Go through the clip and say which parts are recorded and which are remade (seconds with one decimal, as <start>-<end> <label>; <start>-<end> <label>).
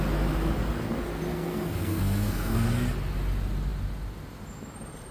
0.0-1.3 recorded; 1.3-2.7 remade; 2.7-5.1 recorded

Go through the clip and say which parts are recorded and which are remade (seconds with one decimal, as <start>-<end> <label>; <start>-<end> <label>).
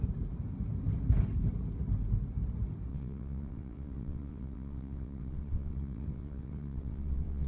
0.0-2.9 recorded; 2.9-7.5 remade